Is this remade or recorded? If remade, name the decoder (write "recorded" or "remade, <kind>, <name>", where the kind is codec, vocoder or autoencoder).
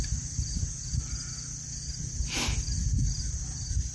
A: recorded